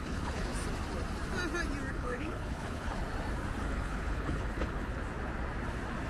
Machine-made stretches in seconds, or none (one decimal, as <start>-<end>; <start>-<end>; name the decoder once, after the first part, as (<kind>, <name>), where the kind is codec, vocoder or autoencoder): 0.0-0.5 (codec, HILCodec); 1.9-3.0; 3.6-4.9